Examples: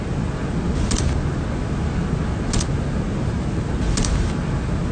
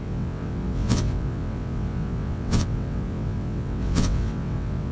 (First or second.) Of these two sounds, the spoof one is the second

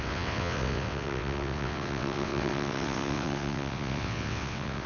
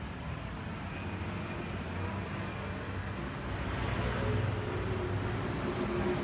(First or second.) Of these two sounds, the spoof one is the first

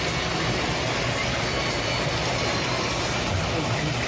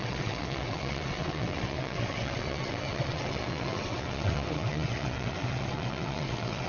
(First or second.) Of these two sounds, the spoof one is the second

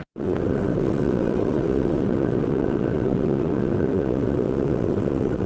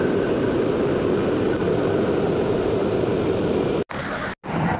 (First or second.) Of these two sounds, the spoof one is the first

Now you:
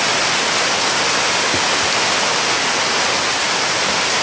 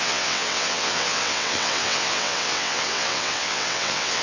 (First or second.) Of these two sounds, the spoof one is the second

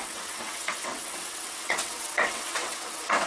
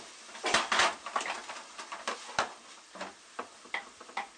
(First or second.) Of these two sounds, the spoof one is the first